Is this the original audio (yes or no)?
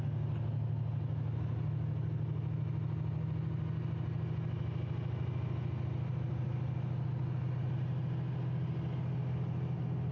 yes